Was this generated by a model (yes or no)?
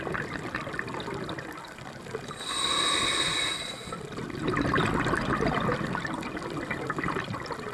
no